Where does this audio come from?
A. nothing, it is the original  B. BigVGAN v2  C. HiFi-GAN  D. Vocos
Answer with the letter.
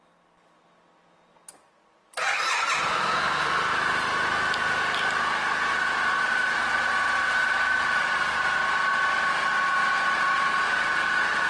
A